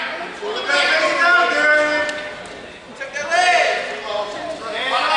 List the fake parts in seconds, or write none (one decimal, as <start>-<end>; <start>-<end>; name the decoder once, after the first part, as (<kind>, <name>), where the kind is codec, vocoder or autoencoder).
none